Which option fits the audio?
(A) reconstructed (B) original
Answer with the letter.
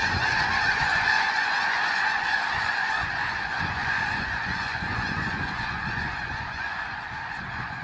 A